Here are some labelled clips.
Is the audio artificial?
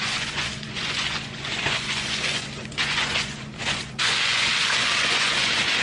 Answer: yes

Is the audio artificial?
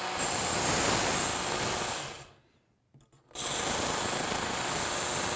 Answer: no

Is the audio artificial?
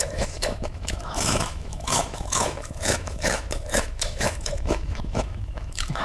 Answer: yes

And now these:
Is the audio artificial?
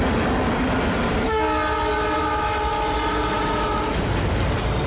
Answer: no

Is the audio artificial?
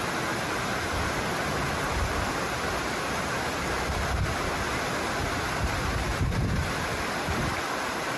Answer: no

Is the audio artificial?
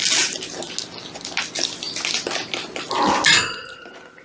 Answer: no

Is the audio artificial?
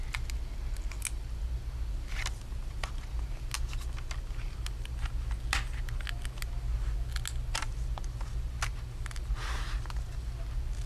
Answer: no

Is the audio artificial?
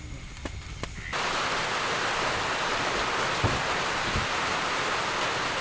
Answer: no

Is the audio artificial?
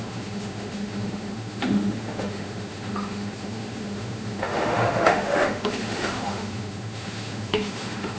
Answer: yes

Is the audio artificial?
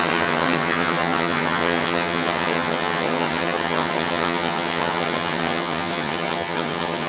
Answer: yes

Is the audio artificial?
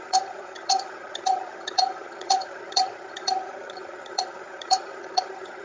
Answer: yes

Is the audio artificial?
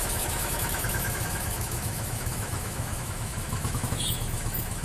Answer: yes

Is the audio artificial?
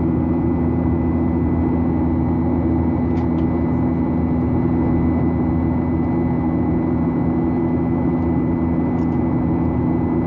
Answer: no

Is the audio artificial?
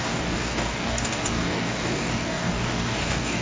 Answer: yes